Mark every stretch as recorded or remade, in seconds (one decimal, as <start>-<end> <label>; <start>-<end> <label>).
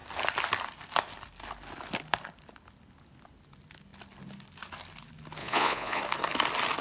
0.0-5.4 recorded; 5.4-6.0 remade; 6.0-6.8 recorded